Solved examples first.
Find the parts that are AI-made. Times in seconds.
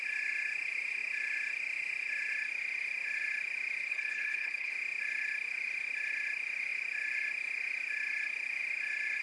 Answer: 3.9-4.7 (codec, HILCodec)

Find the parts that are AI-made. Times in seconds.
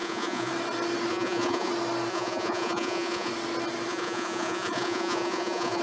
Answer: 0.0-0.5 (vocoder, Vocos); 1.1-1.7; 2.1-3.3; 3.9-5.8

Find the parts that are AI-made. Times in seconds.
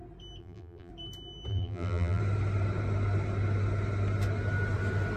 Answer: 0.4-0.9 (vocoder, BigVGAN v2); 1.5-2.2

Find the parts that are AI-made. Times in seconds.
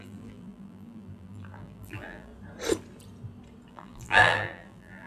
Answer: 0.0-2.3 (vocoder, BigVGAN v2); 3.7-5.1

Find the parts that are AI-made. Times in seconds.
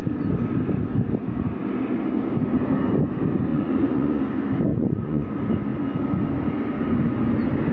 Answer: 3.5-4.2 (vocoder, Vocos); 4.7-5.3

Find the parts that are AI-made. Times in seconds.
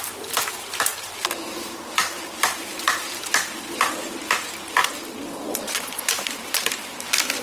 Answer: 0.9-3.2 (vocoder, BigVGAN v2)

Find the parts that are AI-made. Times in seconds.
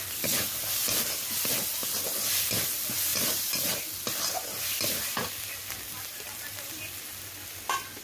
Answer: 3.1-3.8 (vocoder, BigVGAN v2); 6.1-6.7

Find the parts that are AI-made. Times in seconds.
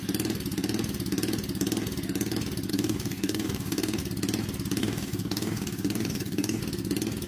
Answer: 2.7-4.0 (codec, DAC); 4.8-6.6